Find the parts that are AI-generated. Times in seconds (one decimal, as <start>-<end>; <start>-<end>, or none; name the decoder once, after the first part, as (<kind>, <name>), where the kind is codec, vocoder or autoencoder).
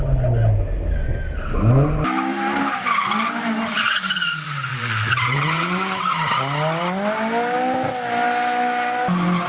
3.8-6.3 (vocoder, WaveNeXt)